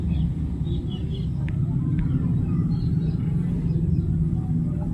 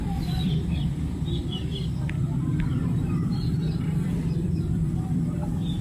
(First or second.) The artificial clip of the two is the second